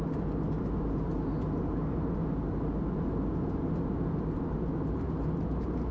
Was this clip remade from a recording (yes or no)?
no